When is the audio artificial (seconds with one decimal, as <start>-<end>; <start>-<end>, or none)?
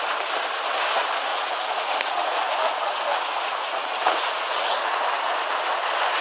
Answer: 1.3-5.0